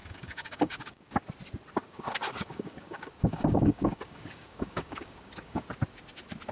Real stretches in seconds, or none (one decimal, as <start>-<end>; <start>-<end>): 1.0-1.8; 5.7-6.5